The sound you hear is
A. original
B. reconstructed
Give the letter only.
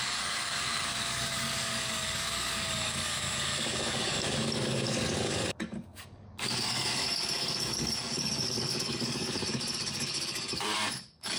B